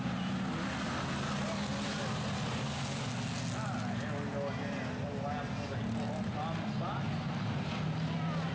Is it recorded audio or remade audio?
recorded